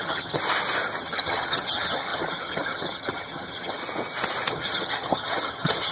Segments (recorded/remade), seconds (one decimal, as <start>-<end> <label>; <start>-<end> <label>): 0.0-0.4 remade; 0.4-1.0 recorded; 1.0-3.8 remade; 3.8-4.5 recorded; 4.5-5.9 remade